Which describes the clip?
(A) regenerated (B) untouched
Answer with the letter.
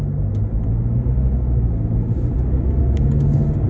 B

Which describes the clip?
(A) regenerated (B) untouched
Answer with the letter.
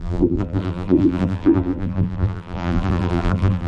A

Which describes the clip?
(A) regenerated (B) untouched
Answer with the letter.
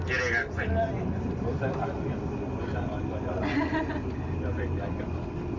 B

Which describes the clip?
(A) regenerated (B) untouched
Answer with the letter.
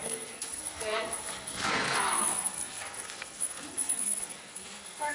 A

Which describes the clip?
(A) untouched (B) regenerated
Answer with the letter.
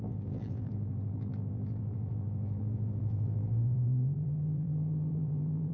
B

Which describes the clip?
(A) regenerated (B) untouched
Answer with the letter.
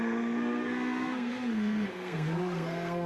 A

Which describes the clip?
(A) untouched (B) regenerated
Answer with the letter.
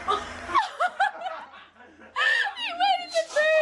A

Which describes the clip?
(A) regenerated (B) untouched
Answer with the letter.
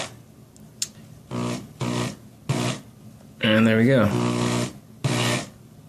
B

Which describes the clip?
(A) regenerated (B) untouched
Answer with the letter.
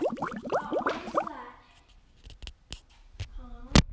B